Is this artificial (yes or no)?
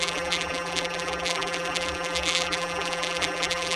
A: yes